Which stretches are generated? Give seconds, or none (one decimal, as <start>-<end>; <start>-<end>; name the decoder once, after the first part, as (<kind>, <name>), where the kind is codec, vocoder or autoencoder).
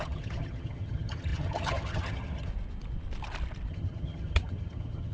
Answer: 0.0-2.5 (vocoder, HiFi-GAN); 3.7-5.1